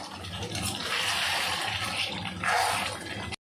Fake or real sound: real